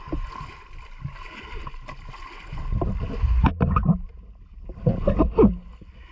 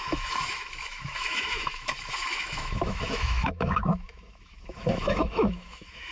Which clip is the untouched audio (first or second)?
first